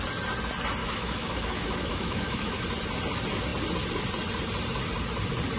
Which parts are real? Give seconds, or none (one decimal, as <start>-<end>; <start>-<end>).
0.0-0.8; 2.6-5.6